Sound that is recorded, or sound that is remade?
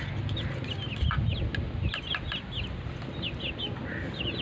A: recorded